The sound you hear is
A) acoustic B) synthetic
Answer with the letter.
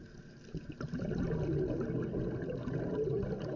A